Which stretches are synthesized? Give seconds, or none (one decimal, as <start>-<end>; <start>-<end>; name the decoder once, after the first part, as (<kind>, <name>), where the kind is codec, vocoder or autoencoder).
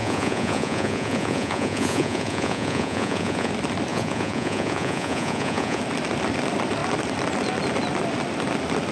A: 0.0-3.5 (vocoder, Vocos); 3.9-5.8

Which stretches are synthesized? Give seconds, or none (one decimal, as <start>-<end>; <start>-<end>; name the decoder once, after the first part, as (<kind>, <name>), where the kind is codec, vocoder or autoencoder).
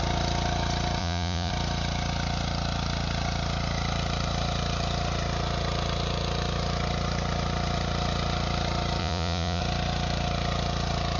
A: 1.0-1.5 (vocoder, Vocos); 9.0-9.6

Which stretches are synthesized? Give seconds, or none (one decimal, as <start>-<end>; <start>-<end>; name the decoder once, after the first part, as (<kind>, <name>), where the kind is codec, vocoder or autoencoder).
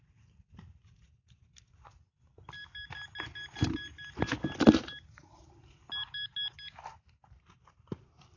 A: none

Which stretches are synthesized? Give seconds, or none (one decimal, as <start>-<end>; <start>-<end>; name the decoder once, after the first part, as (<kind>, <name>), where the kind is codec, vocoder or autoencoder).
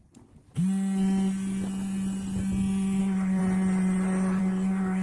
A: 3.0-3.4 (codec, SNAC); 4.4-5.0